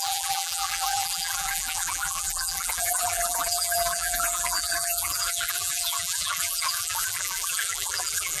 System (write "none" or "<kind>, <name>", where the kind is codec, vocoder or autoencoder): vocoder, BigVGAN v2